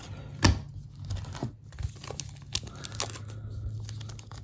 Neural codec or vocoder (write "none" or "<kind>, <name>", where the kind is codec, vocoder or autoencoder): none